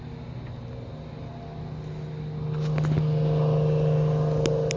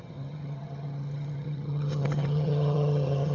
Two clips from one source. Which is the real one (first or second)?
first